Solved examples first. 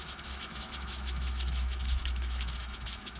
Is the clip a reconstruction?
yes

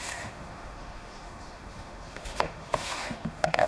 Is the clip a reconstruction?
yes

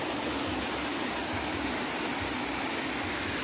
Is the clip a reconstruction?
no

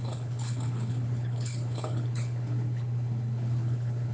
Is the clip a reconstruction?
yes